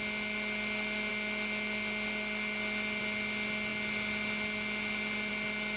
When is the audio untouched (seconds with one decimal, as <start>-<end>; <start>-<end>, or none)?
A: 0.0-5.8